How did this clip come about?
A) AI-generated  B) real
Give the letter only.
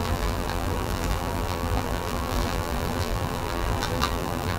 A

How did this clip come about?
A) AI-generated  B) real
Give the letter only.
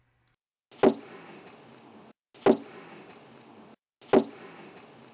B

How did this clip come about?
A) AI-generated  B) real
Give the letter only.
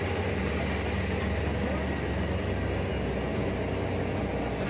B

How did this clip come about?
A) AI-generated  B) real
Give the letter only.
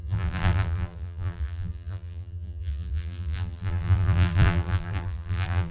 A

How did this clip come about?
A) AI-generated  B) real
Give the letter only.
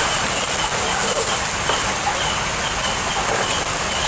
B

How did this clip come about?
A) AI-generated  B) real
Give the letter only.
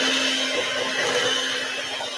B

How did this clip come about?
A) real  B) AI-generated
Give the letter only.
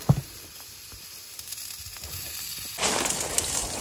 A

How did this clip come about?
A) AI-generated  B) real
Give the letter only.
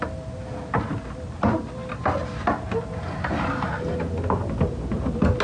B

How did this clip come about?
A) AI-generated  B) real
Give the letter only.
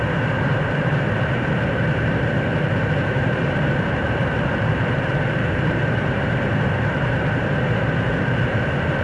A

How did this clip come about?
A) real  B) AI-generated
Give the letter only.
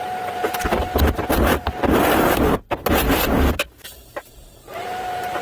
B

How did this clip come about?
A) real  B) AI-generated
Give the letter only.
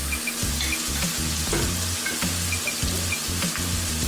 A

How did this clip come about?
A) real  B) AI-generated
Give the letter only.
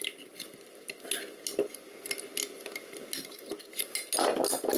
A